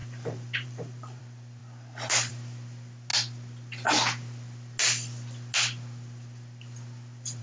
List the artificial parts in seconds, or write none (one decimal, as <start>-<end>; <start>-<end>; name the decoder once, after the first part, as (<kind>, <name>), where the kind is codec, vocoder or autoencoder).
0.0-1.2 (vocoder, BigVGAN v2)